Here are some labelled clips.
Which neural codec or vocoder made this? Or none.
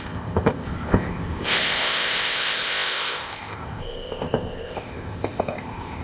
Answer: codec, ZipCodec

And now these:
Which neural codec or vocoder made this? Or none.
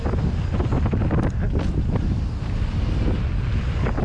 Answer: none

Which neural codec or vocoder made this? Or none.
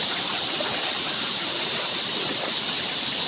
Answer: vocoder, BigVGAN v2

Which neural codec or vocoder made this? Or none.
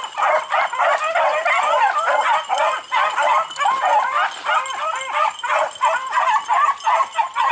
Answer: none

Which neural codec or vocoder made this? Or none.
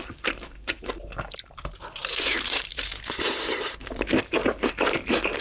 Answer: vocoder, BigVGAN v2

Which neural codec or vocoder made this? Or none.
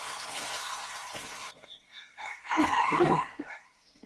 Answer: codec, SNAC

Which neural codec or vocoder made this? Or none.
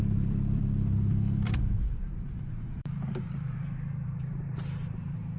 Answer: vocoder, BigVGAN v2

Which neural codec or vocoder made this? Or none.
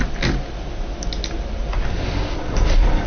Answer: none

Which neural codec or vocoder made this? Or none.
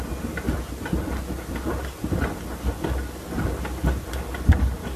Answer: none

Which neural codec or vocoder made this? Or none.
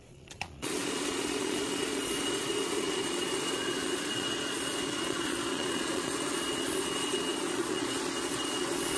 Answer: vocoder, Vocos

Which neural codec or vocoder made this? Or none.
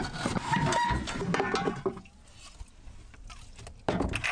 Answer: none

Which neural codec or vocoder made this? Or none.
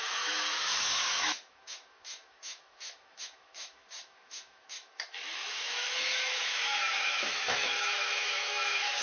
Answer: autoencoder, DAC-VAE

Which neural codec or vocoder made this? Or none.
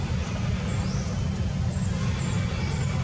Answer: none